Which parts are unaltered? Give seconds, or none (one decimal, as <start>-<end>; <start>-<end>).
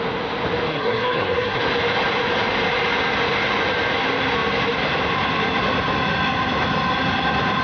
0.0-0.7; 1.6-7.6